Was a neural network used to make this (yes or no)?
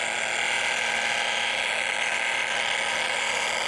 no